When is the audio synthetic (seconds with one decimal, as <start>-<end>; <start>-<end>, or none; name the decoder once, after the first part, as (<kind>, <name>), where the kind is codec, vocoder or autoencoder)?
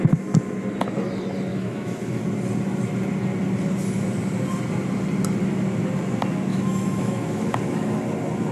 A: 1.5-2.2 (autoencoder, DAC-VAE); 6.5-8.0